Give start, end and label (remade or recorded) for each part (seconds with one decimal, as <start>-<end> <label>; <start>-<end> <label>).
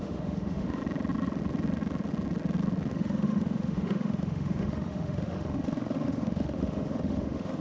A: 0.0-0.8 remade; 0.8-2.9 recorded; 2.9-7.6 remade